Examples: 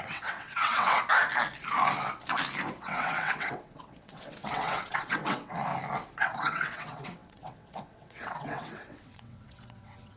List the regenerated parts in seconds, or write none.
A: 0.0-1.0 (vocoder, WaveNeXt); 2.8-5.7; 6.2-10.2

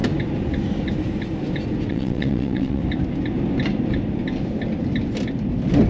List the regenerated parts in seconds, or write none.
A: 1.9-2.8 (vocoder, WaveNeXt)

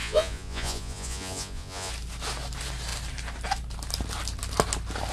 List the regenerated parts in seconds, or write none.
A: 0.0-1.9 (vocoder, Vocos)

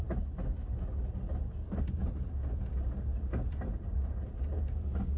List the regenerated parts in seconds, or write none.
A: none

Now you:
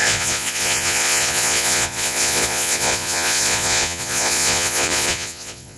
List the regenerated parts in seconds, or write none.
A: 0.0-5.8 (vocoder, Vocos)

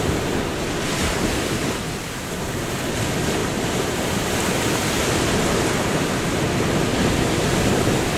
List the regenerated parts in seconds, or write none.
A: none

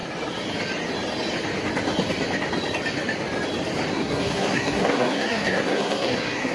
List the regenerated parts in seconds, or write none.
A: 3.9-6.5 (codec, SNAC)